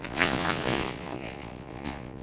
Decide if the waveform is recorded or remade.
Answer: remade